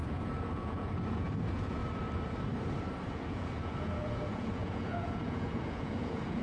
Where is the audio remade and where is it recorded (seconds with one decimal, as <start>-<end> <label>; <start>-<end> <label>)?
0.0-1.8 remade; 1.8-3.1 recorded; 3.1-6.4 remade